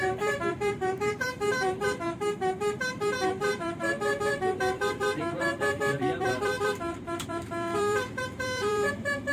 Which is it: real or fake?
fake